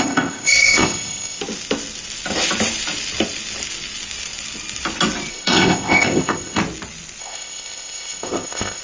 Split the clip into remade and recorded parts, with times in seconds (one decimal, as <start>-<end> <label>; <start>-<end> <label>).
0.0-1.4 remade; 1.4-5.3 recorded; 5.3-6.6 remade; 6.6-7.2 recorded; 7.2-8.8 remade